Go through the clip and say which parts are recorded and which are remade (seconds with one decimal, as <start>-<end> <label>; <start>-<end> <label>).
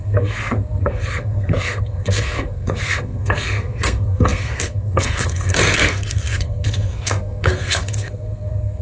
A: 0.0-8.8 remade